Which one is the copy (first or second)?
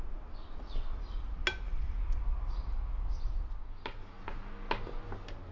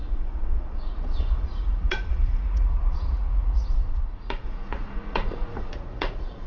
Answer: second